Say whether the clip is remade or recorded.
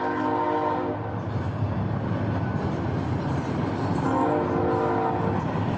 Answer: recorded